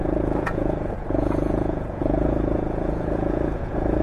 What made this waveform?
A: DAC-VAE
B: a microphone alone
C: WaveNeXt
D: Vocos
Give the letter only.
D